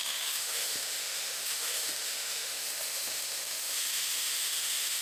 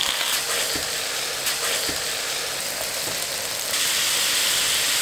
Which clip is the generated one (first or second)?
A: first